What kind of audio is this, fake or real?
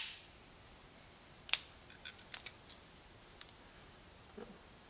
real